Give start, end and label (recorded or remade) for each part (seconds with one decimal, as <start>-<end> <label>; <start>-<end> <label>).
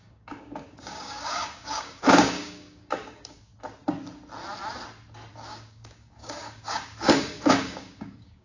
0.0-3.5 remade; 3.5-5.3 recorded; 5.3-8.4 remade